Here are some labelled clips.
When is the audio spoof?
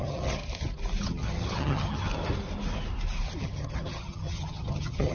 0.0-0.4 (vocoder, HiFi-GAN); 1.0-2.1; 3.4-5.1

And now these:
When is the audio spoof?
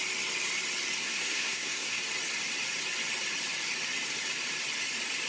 1.0-2.0 (codec, SNAC)